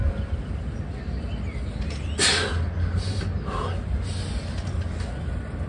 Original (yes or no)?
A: yes